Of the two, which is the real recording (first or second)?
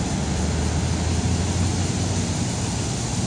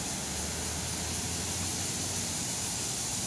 first